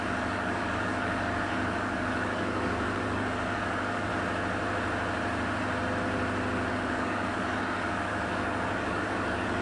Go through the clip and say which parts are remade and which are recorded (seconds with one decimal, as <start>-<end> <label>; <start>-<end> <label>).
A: 0.0-4.1 remade; 4.1-6.7 recorded; 6.7-9.6 remade